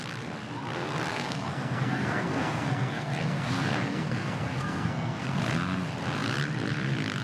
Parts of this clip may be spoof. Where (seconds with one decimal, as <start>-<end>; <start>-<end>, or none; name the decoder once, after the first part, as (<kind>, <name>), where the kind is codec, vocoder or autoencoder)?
1.1-5.4 (codec, SNAC)